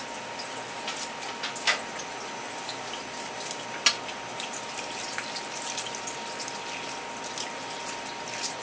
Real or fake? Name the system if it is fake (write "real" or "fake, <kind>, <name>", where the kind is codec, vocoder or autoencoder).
real